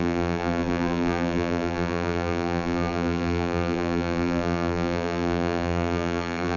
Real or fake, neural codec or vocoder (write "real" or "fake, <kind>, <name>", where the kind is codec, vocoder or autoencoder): fake, vocoder, BigVGAN v2